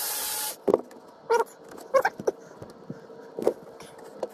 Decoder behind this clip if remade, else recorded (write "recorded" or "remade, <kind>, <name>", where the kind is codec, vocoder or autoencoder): recorded